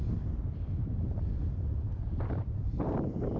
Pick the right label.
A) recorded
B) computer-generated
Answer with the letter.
B